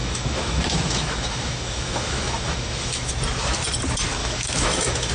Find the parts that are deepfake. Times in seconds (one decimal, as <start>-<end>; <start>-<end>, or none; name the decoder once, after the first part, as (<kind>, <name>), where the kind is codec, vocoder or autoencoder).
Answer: 0.0-3.1 (autoencoder, DAC-VAE); 4.2-5.1